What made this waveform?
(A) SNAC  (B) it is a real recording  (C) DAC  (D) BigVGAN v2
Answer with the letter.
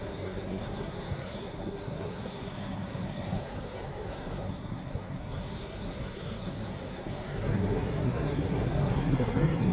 A